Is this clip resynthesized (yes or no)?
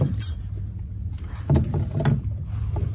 no